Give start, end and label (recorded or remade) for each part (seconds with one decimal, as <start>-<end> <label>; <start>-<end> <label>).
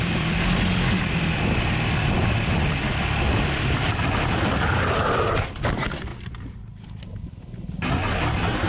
0.0-6.1 remade; 6.1-7.4 recorded; 7.4-8.7 remade